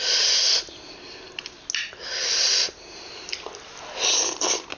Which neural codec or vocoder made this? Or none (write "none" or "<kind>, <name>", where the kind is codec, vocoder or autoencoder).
none